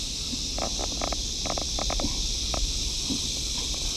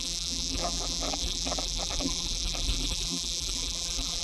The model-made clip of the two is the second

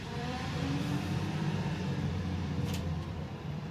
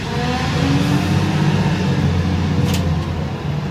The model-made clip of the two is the first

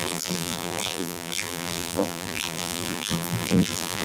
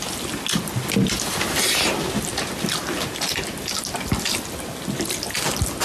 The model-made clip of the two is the first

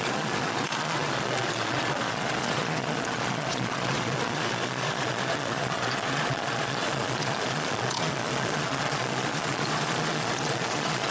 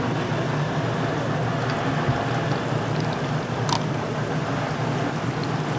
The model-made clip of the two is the first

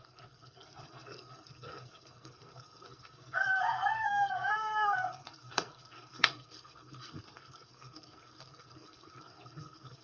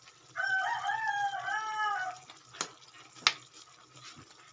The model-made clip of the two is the first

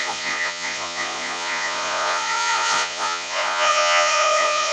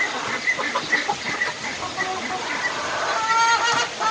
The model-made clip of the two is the first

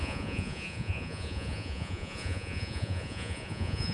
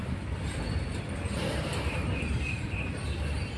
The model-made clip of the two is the first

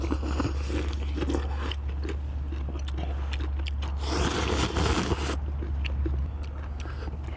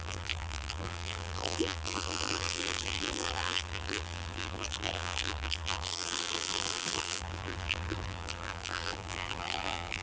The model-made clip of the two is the second